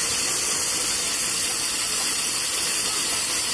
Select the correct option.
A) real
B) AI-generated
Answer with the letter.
A